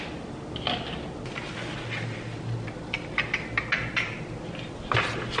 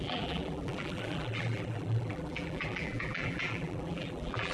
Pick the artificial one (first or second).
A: second